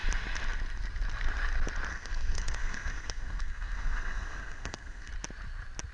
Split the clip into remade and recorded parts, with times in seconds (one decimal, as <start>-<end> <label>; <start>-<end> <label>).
0.0-1.9 recorded; 1.9-5.1 remade; 5.1-5.9 recorded